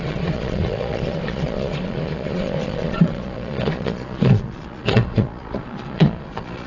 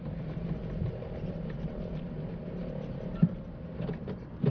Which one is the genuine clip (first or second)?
second